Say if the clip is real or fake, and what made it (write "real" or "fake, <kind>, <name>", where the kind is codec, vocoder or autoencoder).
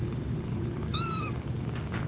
fake, codec, DAC